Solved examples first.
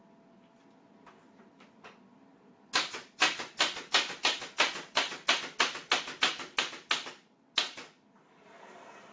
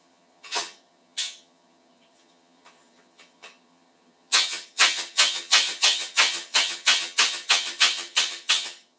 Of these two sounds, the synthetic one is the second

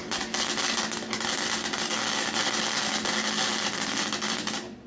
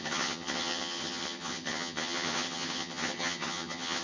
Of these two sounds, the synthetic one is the second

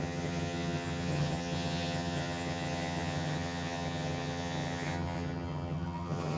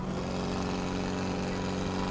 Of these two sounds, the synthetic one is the first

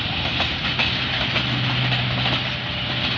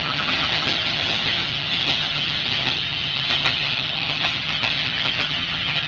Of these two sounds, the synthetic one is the second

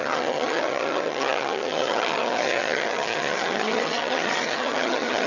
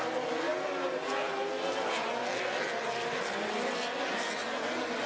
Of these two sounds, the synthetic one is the first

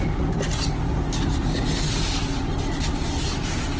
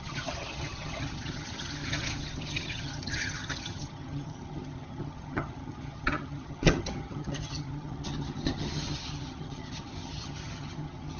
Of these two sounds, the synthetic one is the second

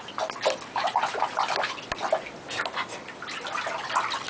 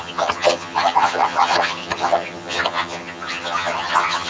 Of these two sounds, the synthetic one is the second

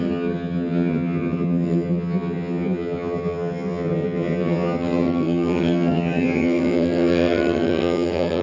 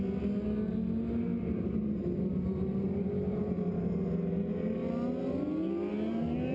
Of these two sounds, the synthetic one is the first